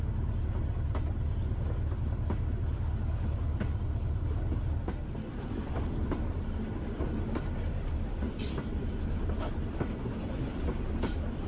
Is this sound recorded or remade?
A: recorded